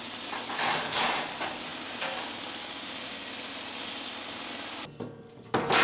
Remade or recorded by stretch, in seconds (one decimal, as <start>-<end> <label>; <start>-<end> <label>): 0.0-5.8 recorded